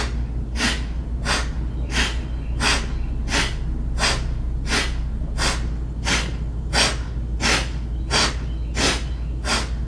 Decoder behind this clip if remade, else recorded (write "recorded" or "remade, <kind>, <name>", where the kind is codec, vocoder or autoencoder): recorded